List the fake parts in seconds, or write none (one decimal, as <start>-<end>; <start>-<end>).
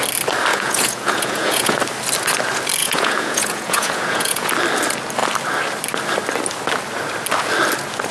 0.5-1.8; 2.8-4.5